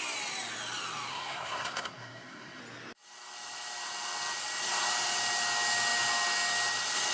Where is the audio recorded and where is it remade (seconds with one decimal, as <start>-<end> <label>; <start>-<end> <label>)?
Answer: 0.0-1.1 recorded; 1.1-2.6 remade; 2.6-7.1 recorded